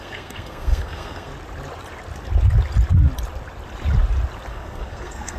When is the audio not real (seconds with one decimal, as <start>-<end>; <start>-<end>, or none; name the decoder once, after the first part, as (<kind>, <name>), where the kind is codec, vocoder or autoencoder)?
0.0-1.3 (codec, SNAC); 4.5-5.4